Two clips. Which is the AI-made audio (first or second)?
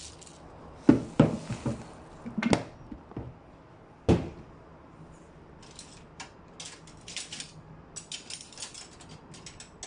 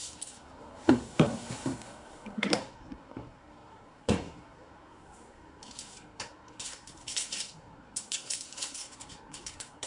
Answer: second